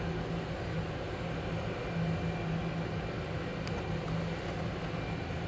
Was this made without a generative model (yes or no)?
yes